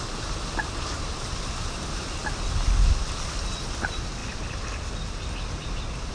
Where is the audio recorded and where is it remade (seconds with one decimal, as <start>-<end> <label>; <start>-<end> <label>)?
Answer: 0.0-6.1 recorded